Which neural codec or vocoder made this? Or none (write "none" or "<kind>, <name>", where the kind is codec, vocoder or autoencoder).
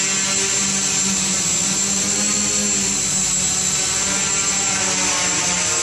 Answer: none